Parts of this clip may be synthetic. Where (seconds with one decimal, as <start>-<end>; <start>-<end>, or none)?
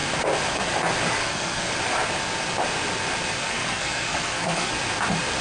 1.2-1.7; 3.4-4.7